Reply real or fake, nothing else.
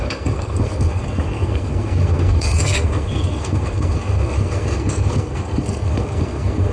fake